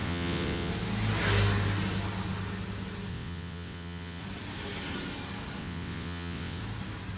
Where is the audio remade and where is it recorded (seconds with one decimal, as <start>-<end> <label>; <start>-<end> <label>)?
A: 0.0-0.7 remade; 0.7-3.1 recorded; 3.1-4.2 remade; 4.2-5.6 recorded; 5.6-6.6 remade; 6.6-7.2 recorded